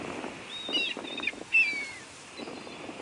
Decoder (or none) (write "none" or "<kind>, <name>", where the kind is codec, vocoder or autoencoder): none